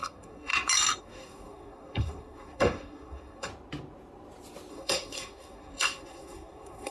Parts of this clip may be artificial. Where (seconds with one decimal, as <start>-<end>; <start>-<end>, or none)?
0.0-0.5; 1.0-3.5; 4.7-6.9